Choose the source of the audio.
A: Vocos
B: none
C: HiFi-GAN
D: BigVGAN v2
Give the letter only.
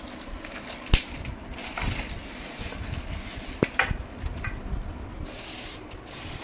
B